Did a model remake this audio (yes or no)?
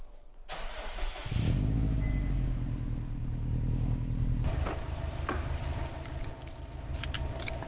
no